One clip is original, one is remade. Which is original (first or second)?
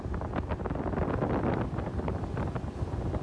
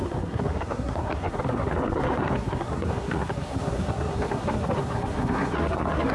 first